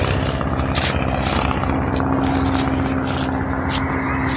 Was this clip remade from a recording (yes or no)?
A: no